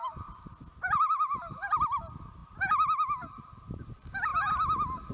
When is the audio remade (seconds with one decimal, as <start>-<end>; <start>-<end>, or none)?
0.7-1.8